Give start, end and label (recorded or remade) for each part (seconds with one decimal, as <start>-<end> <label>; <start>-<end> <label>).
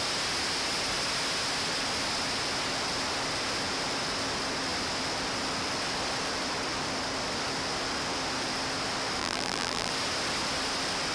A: 0.0-9.2 recorded; 9.2-9.9 remade; 9.9-11.1 recorded